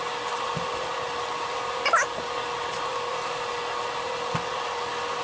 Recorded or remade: recorded